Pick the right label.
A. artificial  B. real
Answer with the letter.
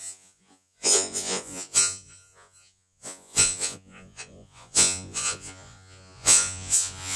A